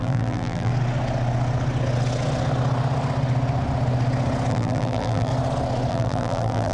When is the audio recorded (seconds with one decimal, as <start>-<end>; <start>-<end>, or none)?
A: 0.7-4.5; 5.3-5.9

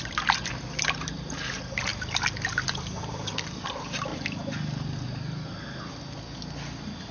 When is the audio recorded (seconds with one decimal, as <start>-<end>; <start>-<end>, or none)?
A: 0.0-7.1